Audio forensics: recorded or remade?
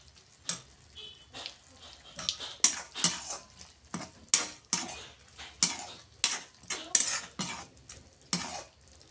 recorded